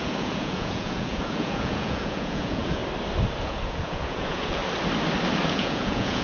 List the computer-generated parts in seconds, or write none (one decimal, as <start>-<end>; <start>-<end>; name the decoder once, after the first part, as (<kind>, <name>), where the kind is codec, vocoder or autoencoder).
0.0-2.8 (vocoder, Vocos); 3.4-4.6; 5.4-6.2